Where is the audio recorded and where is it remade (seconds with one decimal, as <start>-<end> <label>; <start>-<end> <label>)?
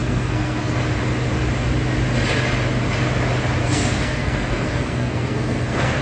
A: 0.0-0.8 remade; 0.8-3.6 recorded; 3.6-6.0 remade